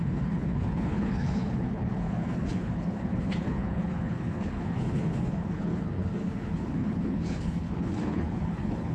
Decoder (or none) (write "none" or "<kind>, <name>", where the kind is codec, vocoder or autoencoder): codec, HILCodec